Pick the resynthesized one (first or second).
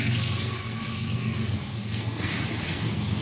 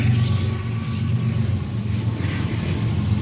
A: first